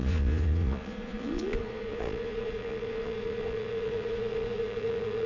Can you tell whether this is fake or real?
fake